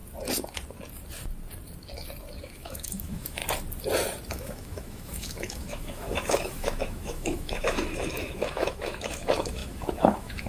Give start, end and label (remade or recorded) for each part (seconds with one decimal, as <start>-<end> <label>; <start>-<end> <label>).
0.0-2.4 recorded; 2.4-3.4 remade; 3.4-4.3 recorded; 4.3-10.5 remade